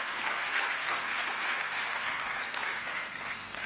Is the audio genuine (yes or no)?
no